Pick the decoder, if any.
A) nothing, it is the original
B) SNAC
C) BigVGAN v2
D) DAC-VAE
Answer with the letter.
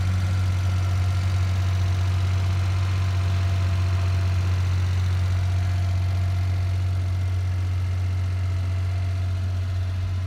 A